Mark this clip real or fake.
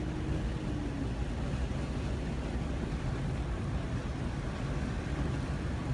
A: real